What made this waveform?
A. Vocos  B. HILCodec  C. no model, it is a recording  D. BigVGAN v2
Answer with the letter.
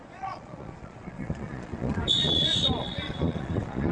A